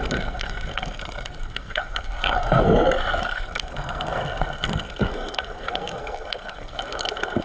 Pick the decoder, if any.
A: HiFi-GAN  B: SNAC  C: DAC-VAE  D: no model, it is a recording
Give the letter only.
B